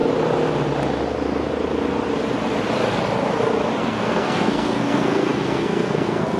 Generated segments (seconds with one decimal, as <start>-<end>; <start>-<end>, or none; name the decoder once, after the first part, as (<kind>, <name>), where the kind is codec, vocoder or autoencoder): 3.8-6.4 (codec, SNAC)